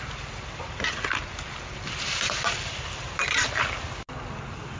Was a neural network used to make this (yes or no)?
no